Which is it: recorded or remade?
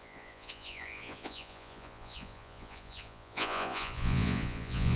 remade